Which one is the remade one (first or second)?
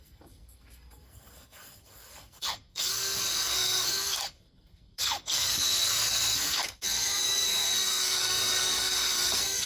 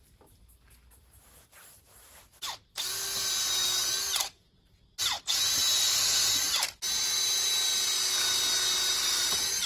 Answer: first